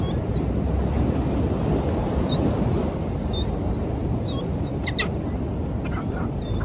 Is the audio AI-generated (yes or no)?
no